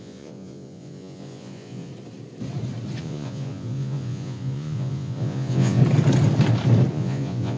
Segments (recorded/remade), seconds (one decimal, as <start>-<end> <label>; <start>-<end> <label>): 0.0-1.9 remade; 1.9-3.0 recorded; 3.0-5.8 remade; 5.8-6.9 recorded; 6.9-7.6 remade